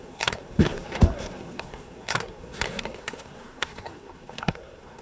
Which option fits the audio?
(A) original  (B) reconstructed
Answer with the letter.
B